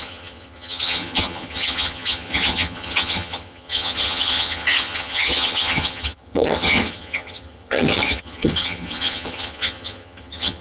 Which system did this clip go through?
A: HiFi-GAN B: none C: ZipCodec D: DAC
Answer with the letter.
A